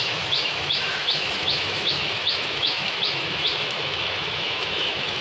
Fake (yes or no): yes